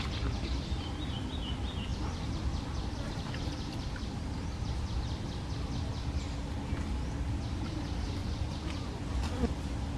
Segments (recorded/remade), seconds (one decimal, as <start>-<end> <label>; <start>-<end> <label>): 0.0-8.2 recorded; 8.2-9.1 remade; 9.1-10.0 recorded